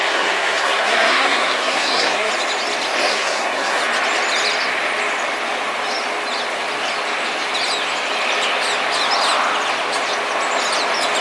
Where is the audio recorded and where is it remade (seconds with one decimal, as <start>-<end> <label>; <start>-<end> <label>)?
0.0-2.3 remade; 2.3-3.1 recorded; 3.1-3.8 remade; 3.8-11.2 recorded